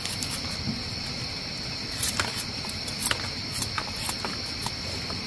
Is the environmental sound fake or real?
real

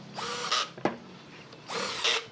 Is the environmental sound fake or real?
real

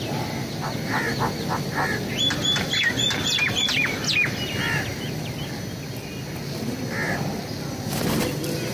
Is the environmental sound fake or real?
real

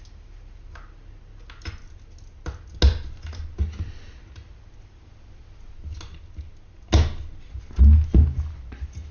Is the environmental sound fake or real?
real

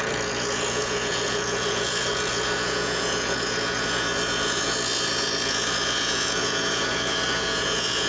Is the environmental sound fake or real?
fake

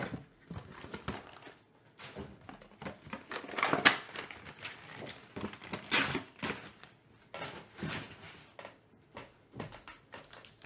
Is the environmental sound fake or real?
real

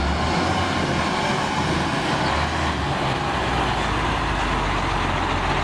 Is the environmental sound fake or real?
real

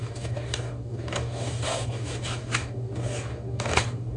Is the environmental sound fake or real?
fake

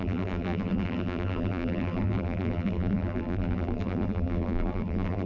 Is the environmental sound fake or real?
fake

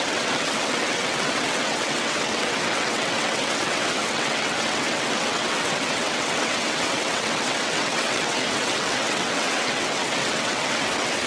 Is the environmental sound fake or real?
fake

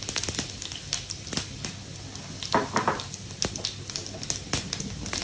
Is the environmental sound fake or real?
real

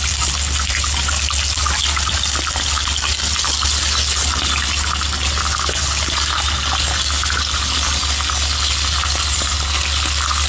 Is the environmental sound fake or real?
real